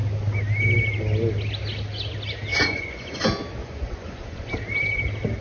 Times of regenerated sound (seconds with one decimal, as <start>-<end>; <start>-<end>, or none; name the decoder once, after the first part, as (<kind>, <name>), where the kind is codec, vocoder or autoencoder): 2.5-3.2 (vocoder, Vocos); 3.6-4.5

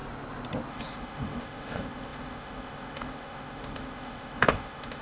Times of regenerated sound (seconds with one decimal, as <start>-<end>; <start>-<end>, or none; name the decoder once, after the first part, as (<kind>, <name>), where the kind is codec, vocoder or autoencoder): 0.7-5.0 (autoencoder, DAC-VAE)